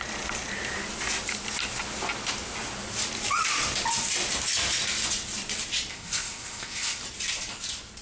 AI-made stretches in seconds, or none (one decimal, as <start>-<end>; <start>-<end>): 5.9-7.0